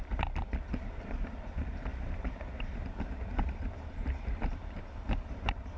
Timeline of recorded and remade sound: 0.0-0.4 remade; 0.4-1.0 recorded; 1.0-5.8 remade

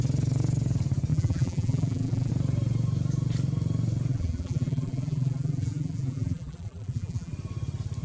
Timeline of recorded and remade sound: 0.0-1.1 recorded; 1.1-2.3 remade; 2.3-4.1 recorded; 4.1-7.3 remade; 7.3-8.0 recorded

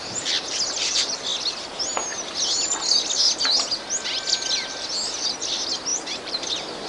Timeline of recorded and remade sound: 0.0-5.9 recorded; 5.9-6.9 remade

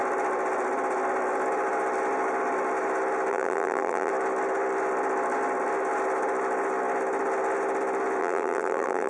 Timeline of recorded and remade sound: 0.0-3.3 recorded; 3.3-4.1 remade; 4.1-8.2 recorded; 8.2-9.1 remade